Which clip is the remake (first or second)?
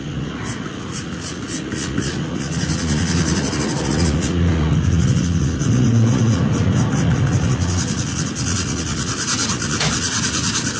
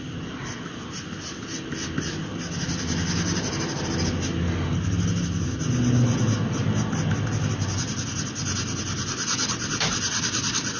first